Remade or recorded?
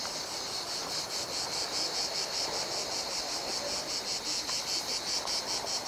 recorded